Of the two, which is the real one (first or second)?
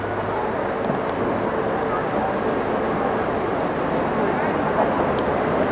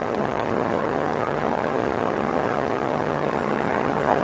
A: first